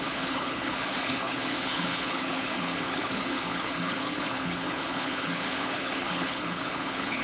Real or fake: fake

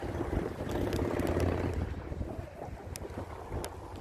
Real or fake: real